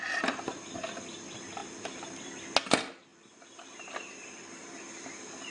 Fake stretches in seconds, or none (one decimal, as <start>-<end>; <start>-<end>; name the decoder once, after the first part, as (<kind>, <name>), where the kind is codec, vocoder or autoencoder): none